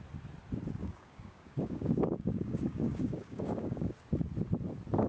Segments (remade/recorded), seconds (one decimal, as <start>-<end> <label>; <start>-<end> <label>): 0.0-0.8 recorded; 0.8-3.9 remade; 3.9-5.1 recorded